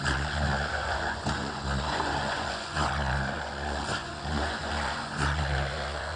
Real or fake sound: fake